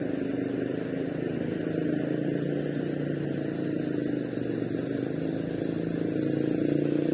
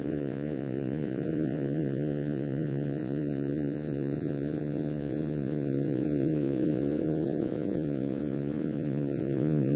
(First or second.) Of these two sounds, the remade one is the second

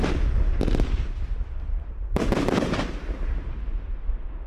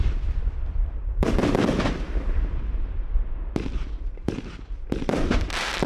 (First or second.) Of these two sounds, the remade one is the second